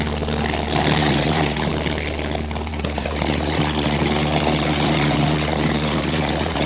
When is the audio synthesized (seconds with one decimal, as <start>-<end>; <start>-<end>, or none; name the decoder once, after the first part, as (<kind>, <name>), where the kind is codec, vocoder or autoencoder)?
1.0-1.7 (vocoder, Vocos); 2.7-6.7